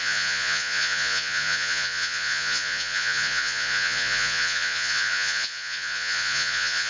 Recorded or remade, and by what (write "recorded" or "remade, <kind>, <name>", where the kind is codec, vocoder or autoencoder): remade, vocoder, Vocos